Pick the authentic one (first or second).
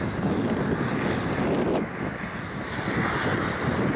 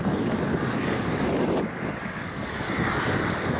first